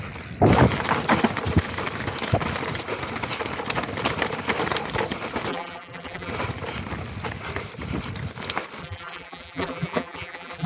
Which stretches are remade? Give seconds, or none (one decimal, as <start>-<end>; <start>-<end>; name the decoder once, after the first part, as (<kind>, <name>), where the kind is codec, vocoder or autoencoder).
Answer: 5.5-6.3 (vocoder, BigVGAN v2); 8.8-10.7